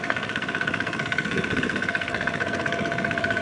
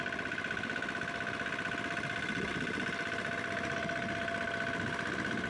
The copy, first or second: first